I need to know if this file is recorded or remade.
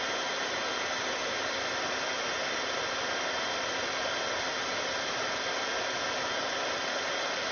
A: recorded